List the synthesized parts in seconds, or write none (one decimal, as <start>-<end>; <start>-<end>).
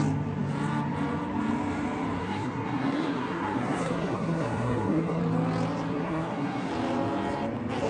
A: 2.2-5.2; 5.9-6.7